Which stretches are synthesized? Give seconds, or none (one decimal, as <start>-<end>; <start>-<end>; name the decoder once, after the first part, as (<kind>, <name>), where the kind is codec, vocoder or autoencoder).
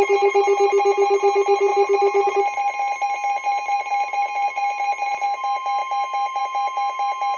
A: none